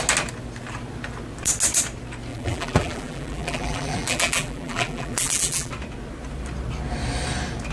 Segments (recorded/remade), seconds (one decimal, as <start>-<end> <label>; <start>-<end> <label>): 0.0-2.3 recorded; 2.3-5.7 remade; 5.7-7.7 recorded